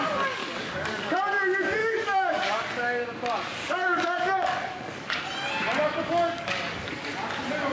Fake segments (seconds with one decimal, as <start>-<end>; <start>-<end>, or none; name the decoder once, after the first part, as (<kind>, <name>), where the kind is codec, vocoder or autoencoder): 0.4-1.2 (codec, DAC); 1.8-2.7; 3.6-5.2; 6.1-7.1

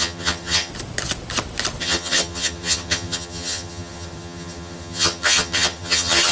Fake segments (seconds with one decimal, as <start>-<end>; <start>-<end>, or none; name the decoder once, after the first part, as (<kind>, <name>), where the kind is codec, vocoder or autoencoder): 0.0-0.7 (vocoder, HiFi-GAN); 1.8-6.3